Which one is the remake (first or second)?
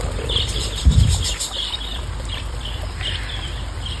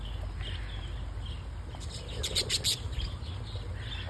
first